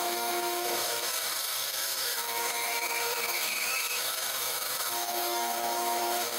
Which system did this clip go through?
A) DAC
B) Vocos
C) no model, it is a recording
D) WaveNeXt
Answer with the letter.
A